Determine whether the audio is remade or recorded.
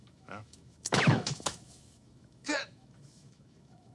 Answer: remade